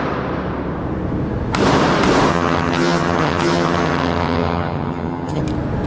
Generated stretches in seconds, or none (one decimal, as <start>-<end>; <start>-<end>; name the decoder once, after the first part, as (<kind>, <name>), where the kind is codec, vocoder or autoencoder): 2.3-5.4 (vocoder, HiFi-GAN)